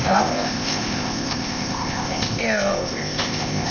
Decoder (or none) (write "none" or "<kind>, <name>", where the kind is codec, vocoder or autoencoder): codec, ZipCodec